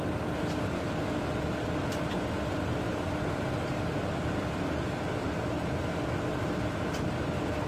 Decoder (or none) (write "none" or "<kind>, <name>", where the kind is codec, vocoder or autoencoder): none